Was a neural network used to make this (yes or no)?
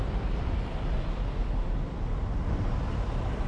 no